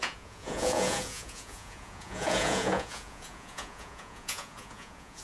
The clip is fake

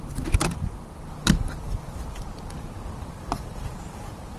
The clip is fake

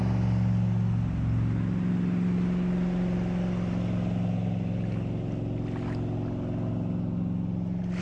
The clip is real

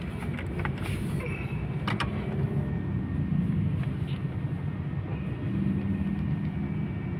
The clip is real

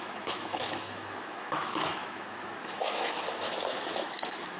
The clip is fake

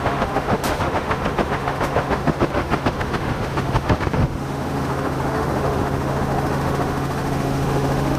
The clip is fake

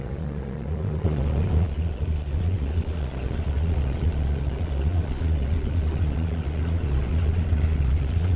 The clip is fake